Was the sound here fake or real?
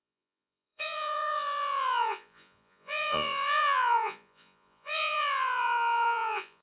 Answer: fake